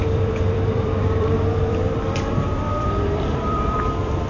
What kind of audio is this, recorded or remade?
remade